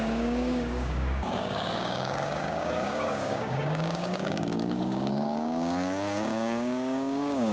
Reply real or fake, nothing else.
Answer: fake